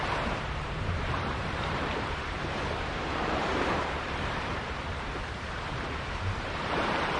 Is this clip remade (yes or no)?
yes